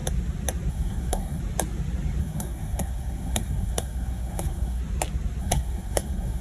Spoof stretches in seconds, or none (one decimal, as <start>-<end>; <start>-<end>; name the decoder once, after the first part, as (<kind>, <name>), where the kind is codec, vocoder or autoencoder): 0.7-1.4 (codec, SNAC); 2.2-4.8; 5.4-6.4